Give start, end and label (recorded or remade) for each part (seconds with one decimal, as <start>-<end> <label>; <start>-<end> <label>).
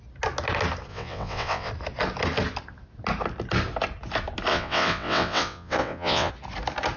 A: 0.0-0.9 recorded; 0.9-1.7 remade; 1.7-4.5 recorded; 4.5-6.3 remade; 6.3-7.0 recorded